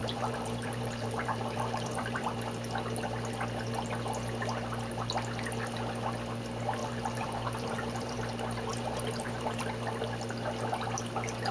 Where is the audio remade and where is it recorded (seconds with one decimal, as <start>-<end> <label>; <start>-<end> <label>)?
0.0-2.3 remade; 2.3-6.8 recorded; 6.8-8.2 remade; 8.2-8.7 recorded; 8.7-9.6 remade; 9.6-11.5 recorded